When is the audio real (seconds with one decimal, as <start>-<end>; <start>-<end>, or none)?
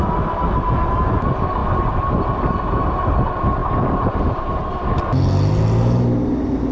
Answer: 0.0-3.6; 5.0-6.7